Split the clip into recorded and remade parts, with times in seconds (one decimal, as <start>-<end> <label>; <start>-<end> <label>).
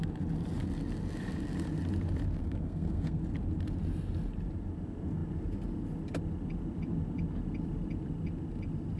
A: 0.0-2.4 recorded; 2.4-3.2 remade; 3.2-9.0 recorded